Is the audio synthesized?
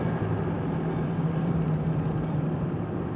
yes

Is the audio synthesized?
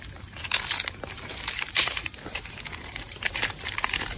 yes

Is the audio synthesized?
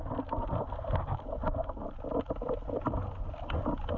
no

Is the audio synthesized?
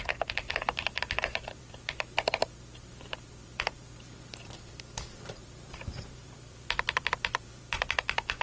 yes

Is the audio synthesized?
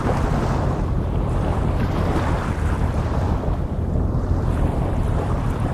yes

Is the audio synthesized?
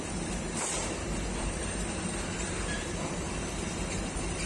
yes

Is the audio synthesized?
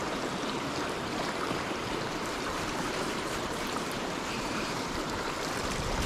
yes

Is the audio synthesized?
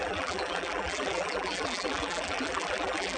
yes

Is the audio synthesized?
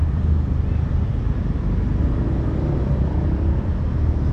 no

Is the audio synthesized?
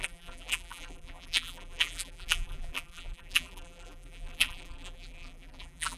yes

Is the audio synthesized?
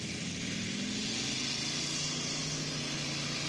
no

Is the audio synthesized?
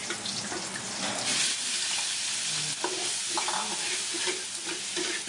no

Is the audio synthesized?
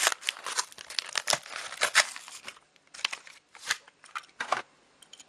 no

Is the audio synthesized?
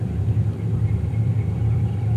yes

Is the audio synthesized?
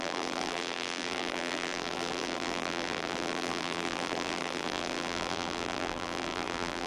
yes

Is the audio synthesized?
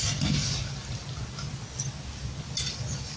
no